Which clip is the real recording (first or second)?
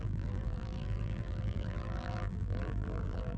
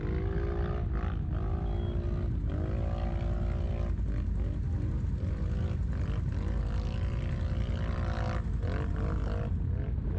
second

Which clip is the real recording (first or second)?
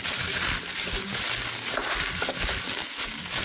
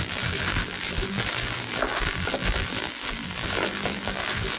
first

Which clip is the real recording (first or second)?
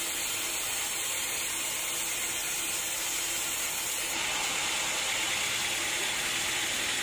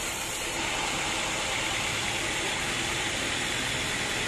first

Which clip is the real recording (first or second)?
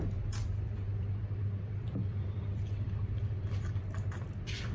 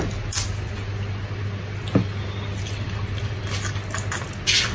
second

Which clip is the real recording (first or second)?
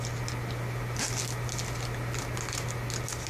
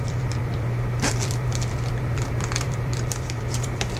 first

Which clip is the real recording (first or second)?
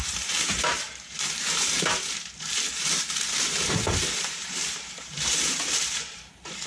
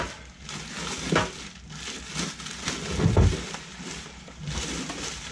second